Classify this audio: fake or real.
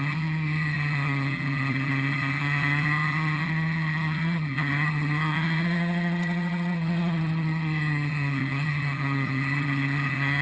fake